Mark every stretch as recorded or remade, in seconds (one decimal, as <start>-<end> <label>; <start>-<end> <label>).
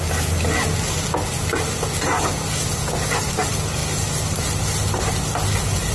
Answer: 0.0-5.9 recorded